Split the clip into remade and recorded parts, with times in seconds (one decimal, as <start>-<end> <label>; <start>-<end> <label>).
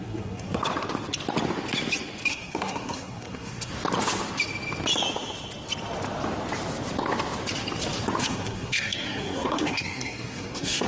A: 0.0-0.6 remade; 0.6-2.3 recorded; 2.3-3.7 remade; 3.7-8.2 recorded; 8.2-10.9 remade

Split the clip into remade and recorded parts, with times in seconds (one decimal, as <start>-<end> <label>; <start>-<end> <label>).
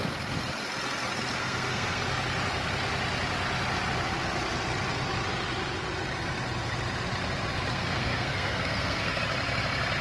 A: 0.0-1.4 recorded; 1.4-2.0 remade; 2.0-7.7 recorded; 7.7-9.2 remade; 9.2-10.0 recorded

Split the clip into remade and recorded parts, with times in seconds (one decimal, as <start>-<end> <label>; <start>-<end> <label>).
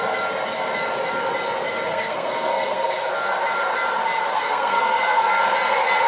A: 0.0-1.9 recorded; 1.9-3.1 remade; 3.1-4.3 recorded; 4.3-5.4 remade; 5.4-6.1 recorded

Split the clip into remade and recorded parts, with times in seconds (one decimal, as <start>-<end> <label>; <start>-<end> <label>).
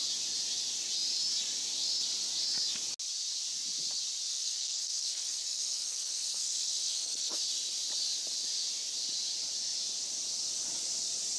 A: 0.0-4.3 recorded; 4.3-7.4 remade; 7.4-11.4 recorded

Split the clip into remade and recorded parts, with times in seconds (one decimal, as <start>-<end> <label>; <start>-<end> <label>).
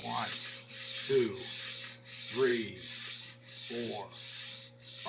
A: 0.0-5.1 recorded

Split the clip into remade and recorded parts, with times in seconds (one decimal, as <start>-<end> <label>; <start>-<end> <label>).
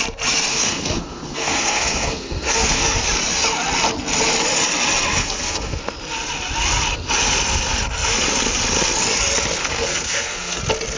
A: 0.0-0.5 recorded; 0.5-2.8 remade; 2.8-5.2 recorded; 5.2-5.8 remade; 5.8-9.6 recorded; 9.6-10.6 remade; 10.6-11.0 recorded